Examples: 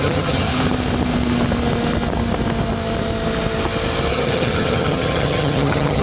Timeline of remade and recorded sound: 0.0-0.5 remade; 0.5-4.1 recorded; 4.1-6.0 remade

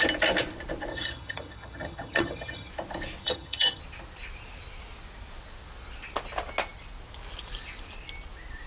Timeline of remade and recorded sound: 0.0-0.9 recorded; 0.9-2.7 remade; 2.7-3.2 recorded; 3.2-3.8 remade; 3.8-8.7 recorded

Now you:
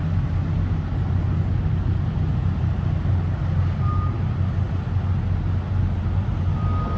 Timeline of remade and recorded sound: 0.0-7.0 recorded

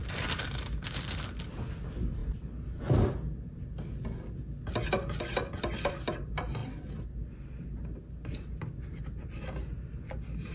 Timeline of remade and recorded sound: 0.0-10.5 recorded

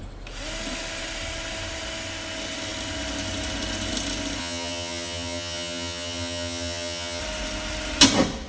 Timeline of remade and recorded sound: 0.0-4.4 recorded; 4.4-7.2 remade; 7.2-8.5 recorded

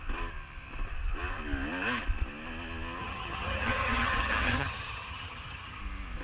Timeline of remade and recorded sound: 0.0-3.0 recorded; 3.0-5.8 remade; 5.8-6.2 recorded

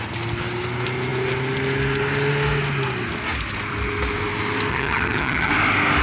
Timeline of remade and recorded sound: 0.0-4.7 recorded; 4.7-5.5 remade; 5.5-6.0 recorded

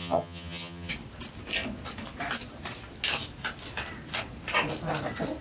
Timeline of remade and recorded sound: 0.0-0.9 remade; 0.9-5.4 recorded